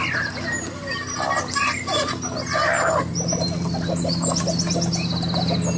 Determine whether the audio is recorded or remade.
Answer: recorded